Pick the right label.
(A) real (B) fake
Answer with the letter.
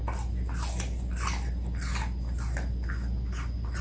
A